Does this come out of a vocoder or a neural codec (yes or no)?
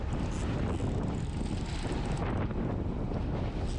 no